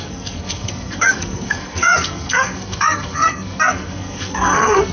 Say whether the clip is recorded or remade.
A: remade